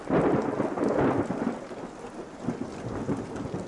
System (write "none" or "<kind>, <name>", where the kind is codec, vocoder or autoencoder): none